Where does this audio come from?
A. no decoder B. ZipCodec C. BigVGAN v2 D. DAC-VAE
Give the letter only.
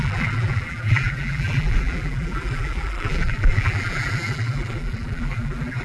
C